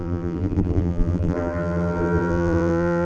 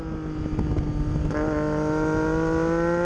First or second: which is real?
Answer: second